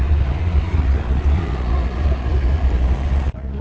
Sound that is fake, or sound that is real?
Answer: fake